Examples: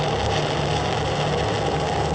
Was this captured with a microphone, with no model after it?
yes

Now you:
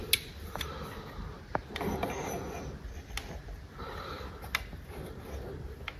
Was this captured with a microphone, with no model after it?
yes